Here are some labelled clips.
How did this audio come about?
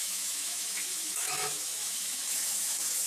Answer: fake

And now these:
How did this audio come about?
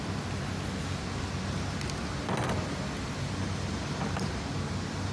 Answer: real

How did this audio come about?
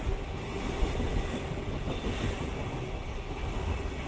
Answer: real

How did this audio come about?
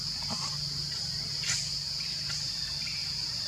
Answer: real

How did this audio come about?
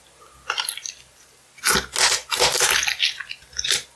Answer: real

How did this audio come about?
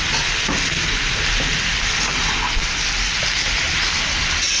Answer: real